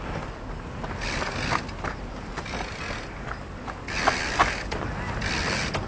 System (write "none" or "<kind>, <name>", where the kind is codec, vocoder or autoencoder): none